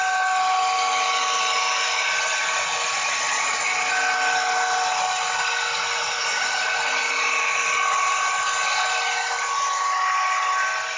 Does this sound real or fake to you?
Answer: real